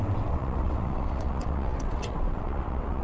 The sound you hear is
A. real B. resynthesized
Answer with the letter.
B